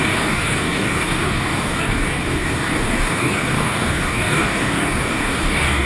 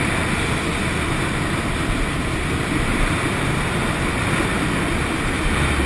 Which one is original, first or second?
second